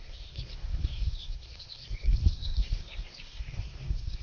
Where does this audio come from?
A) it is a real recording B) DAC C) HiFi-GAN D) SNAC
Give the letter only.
D